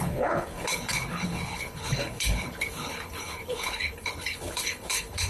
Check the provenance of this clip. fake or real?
fake